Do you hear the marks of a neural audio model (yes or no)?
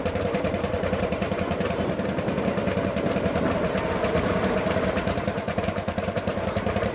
yes